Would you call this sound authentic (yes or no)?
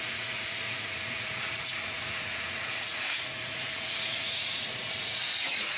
no